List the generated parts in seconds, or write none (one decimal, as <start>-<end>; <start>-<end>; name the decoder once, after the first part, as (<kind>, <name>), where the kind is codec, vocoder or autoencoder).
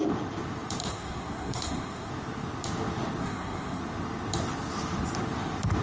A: 0.8-2.1 (codec, SNAC); 3.2-3.8